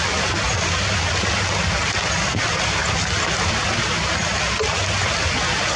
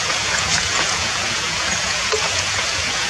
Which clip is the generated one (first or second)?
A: second